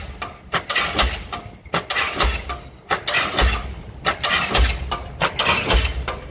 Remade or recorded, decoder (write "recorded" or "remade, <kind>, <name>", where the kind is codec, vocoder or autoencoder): recorded